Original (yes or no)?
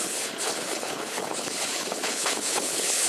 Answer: no